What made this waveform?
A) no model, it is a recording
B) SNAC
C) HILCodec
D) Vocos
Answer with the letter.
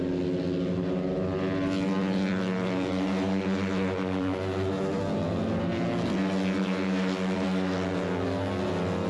A